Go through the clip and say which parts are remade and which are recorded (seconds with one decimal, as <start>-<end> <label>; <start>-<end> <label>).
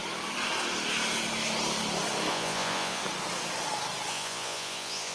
0.0-2.3 recorded; 2.3-3.0 remade; 3.0-4.1 recorded; 4.1-5.1 remade